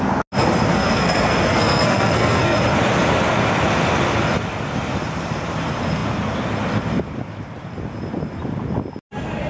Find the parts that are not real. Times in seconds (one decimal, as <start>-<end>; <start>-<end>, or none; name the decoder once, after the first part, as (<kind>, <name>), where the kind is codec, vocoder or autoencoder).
0.7-2.6 (codec, SNAC)